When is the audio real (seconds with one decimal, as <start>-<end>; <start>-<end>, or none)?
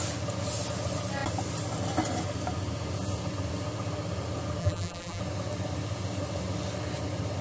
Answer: 0.0-4.6; 5.2-7.4